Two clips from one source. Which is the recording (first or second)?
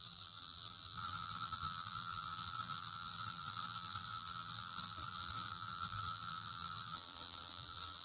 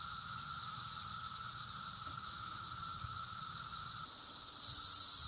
second